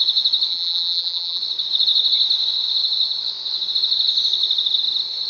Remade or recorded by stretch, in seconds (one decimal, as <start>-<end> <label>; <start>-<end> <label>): 0.0-0.5 recorded; 0.5-1.4 remade; 1.4-5.3 recorded